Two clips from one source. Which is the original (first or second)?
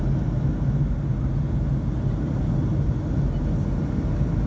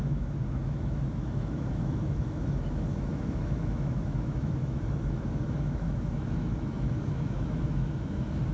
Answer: first